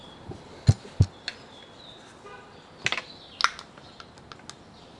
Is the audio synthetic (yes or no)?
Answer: no